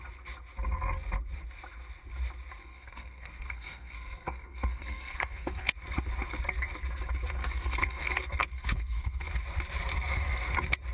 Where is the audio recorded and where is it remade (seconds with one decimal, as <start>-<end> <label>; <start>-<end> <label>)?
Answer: 0.0-2.6 recorded; 2.6-5.7 remade; 5.7-7.4 recorded; 7.4-9.3 remade; 9.3-10.9 recorded